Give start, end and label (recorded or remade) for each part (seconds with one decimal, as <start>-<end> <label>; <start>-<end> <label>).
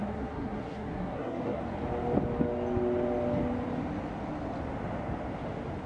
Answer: 0.0-1.6 remade; 1.6-5.9 recorded